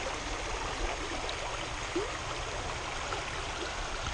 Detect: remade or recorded recorded